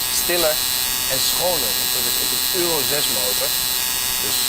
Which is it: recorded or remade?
recorded